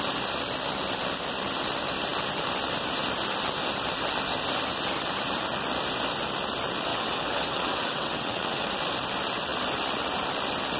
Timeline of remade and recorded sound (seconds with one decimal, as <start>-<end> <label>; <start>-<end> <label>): 0.0-6.9 recorded; 6.9-8.7 remade; 8.7-10.8 recorded